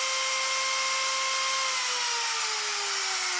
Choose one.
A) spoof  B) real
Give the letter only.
B